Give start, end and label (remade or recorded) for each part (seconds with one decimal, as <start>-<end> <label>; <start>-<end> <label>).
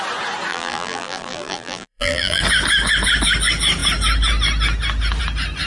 0.0-0.5 recorded; 0.5-2.4 remade; 2.4-5.7 recorded